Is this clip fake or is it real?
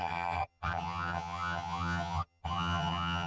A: fake